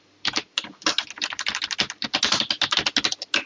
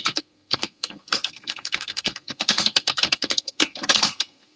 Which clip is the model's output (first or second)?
second